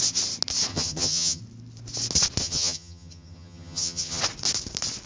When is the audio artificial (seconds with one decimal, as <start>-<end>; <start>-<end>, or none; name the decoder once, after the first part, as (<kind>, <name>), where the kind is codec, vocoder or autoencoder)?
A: 0.7-1.4 (vocoder, HiFi-GAN); 2.4-4.2